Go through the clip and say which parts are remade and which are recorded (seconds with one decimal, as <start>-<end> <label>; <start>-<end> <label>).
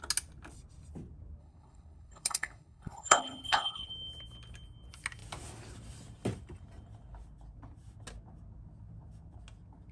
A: 0.0-1.4 recorded; 1.4-3.9 remade; 3.9-9.9 recorded